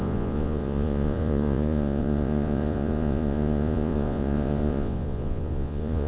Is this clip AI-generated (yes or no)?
yes